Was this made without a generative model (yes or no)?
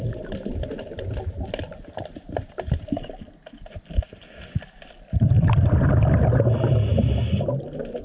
yes